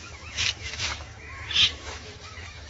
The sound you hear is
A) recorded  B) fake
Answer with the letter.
B